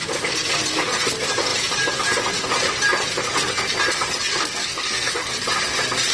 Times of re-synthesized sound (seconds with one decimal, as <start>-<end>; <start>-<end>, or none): 4.6-5.3